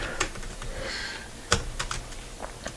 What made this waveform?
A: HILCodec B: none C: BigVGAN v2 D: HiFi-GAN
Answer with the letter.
B